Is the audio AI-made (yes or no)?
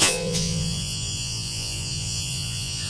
yes